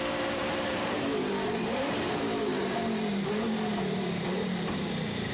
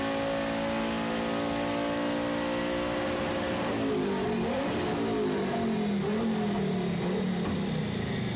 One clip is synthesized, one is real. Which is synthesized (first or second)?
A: first